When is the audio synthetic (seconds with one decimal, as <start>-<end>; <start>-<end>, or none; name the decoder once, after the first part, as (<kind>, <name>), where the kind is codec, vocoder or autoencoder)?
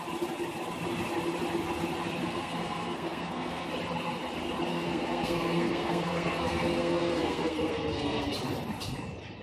2.2-3.7 (codec, SNAC); 4.7-8.3